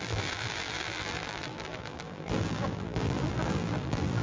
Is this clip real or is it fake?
fake